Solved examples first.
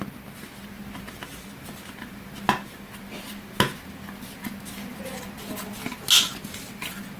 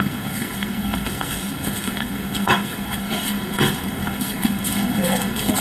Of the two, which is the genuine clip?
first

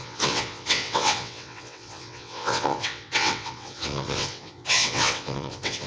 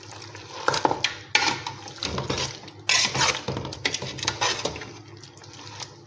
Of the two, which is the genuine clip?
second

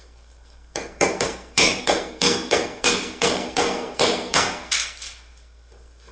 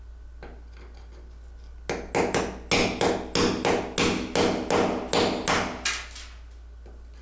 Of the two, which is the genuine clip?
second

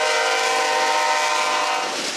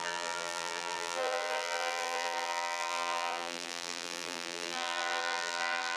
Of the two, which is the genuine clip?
first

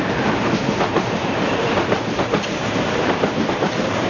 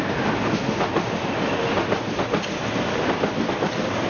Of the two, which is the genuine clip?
second